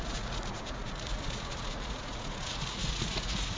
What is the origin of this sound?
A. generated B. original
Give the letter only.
A